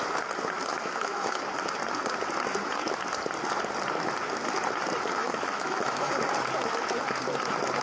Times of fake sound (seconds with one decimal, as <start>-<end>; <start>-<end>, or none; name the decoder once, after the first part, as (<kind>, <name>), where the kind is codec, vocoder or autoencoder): 0.7-1.4 (autoencoder, DAC-VAE); 5.2-6.2